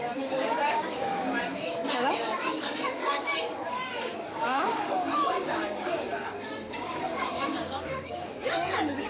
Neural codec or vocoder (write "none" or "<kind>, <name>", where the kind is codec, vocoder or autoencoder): codec, DAC